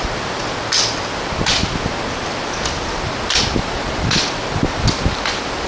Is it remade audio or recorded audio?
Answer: recorded